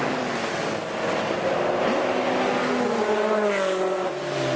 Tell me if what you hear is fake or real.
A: real